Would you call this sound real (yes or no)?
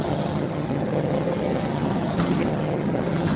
no